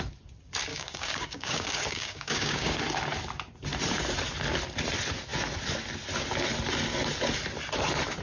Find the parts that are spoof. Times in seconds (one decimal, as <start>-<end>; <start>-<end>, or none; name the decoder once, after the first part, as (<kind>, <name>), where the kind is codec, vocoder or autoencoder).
0.7-2.8 (codec, DAC)